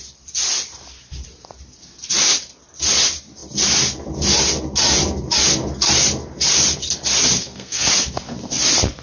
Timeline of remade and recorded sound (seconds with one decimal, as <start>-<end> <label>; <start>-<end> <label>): 0.0-7.4 recorded; 7.4-7.9 remade; 7.9-9.0 recorded